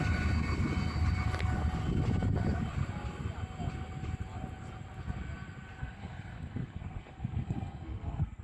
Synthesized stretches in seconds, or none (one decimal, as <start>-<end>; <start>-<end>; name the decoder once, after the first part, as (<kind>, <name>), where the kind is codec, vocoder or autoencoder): 5.8-8.4 (codec, SNAC)